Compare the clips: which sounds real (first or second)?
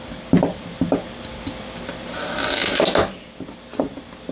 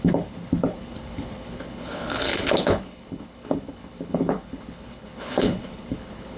first